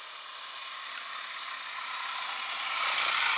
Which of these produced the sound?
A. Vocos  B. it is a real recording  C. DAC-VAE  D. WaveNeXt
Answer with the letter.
B